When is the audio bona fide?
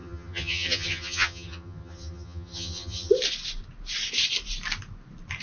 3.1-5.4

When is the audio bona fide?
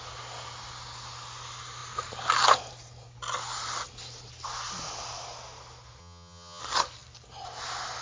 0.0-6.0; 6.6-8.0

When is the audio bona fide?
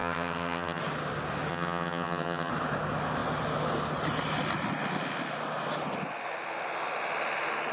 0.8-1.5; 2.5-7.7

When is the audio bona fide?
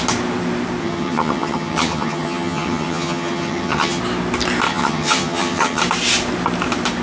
0.0-0.8; 4.0-4.7; 5.8-7.0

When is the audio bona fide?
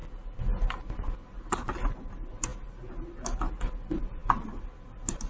0.0-5.3